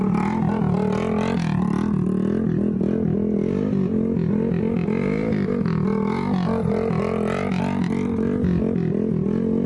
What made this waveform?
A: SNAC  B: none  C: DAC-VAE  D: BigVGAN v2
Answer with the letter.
B